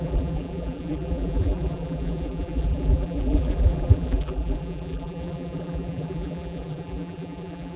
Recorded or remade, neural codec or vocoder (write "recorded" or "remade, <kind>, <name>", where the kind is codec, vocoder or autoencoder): remade, vocoder, BigVGAN v2